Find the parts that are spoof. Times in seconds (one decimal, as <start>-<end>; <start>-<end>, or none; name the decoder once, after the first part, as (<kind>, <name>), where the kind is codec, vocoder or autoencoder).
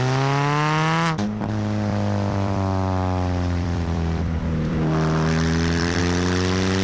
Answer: 1.9-6.0 (vocoder, BigVGAN v2)